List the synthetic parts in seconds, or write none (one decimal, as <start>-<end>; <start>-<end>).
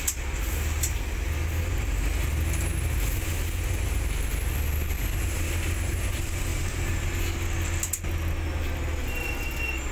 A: none